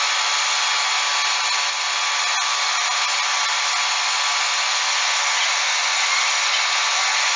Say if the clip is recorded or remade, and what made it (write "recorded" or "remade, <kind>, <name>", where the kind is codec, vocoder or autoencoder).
recorded